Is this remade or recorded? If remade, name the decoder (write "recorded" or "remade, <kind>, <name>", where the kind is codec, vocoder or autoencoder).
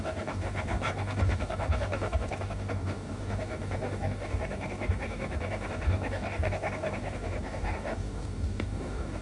remade, codec, DAC